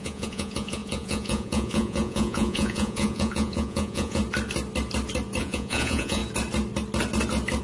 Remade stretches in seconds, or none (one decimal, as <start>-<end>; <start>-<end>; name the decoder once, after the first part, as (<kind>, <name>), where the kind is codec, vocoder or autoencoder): 0.0-4.2 (vocoder, Vocos); 5.4-6.2